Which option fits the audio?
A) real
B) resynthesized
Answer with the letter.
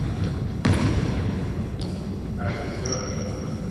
B